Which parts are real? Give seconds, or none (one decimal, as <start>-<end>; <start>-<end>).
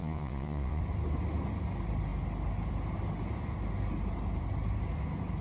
0.8-5.4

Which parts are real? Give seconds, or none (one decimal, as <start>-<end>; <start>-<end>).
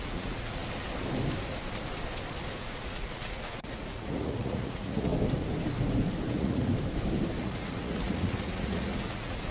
0.6-2.6; 5.1-6.3; 6.7-7.4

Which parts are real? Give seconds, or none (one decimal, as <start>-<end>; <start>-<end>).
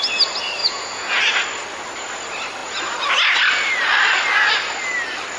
0.0-0.6; 1.2-5.4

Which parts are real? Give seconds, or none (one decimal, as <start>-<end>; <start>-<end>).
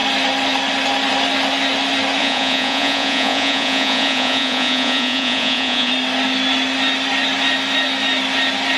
0.0-2.2; 5.9-8.8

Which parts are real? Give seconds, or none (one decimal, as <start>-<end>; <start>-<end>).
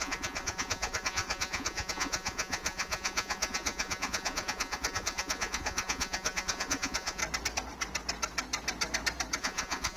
7.2-9.4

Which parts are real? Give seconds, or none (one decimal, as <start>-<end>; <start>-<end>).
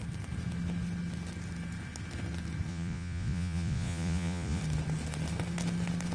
0.0-2.7; 4.6-6.1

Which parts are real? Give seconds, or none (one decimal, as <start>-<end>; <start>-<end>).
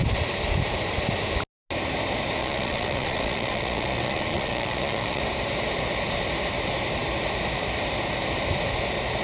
0.0-2.4; 5.2-9.2